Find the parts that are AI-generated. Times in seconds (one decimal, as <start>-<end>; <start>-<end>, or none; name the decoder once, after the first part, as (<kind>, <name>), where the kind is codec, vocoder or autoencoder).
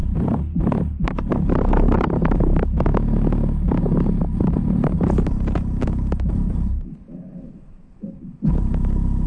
0.0-2.9 (vocoder, BigVGAN v2); 4.5-9.3